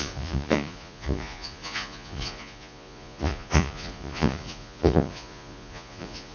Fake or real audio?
fake